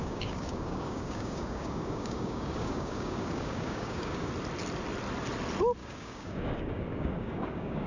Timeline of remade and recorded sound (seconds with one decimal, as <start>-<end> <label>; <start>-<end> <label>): 0.0-4.3 remade; 4.3-5.8 recorded; 5.8-7.9 remade